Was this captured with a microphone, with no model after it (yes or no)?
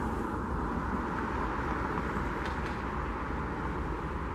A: yes